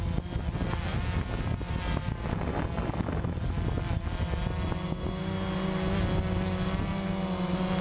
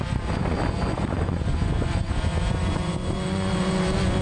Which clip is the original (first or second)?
first